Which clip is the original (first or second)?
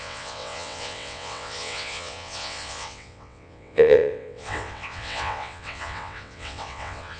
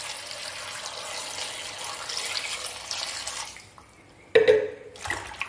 second